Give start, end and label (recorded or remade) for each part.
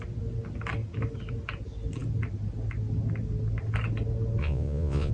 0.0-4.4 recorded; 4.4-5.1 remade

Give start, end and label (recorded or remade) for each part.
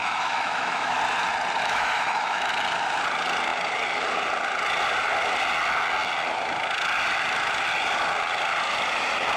0.0-1.0 remade; 1.0-1.6 recorded; 1.6-2.5 remade; 2.5-9.4 recorded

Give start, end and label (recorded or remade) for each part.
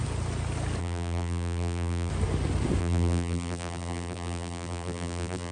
0.0-0.8 recorded; 0.8-2.1 remade; 2.1-2.8 recorded; 2.8-5.5 remade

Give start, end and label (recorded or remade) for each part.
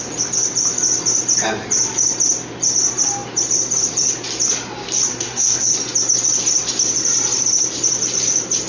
0.0-5.1 recorded; 5.1-5.7 remade; 5.7-8.7 recorded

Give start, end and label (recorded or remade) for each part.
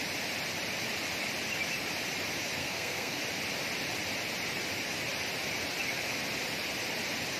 0.0-2.6 recorded; 2.6-3.2 remade; 3.2-7.4 recorded